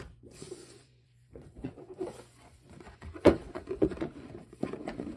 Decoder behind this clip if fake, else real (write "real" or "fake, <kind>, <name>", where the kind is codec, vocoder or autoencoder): fake, vocoder, Vocos